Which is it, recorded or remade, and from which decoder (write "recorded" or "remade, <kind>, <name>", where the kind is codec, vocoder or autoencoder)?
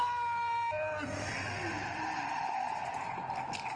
recorded